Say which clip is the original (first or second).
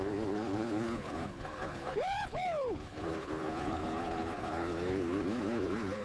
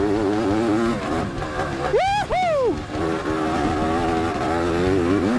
second